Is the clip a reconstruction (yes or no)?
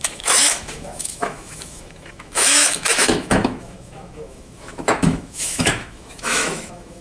yes